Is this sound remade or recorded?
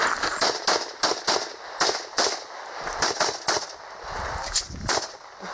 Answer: recorded